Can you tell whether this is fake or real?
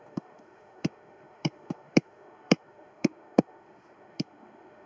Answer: fake